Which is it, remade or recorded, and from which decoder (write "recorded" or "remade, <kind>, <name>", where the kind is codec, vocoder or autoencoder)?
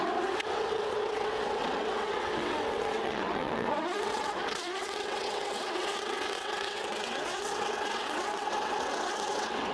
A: remade, vocoder, WaveNeXt